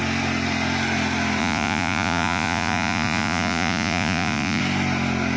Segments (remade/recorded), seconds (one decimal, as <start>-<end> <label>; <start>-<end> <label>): 0.0-1.4 recorded; 1.4-4.6 remade; 4.6-5.4 recorded